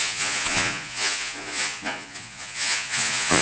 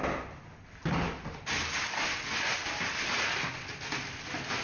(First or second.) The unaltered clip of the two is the second